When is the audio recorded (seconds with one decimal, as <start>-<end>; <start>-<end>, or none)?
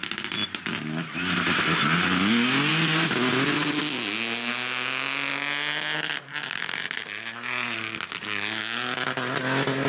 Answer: 0.0-9.9